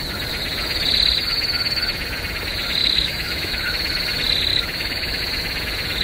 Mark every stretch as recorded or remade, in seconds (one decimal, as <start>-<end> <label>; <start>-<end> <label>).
0.0-2.8 recorded; 2.8-3.7 remade; 3.7-4.5 recorded; 4.5-5.2 remade; 5.2-6.0 recorded